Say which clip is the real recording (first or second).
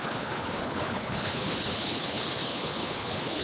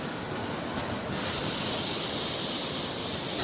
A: second